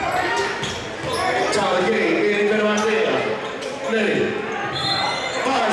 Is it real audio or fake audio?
real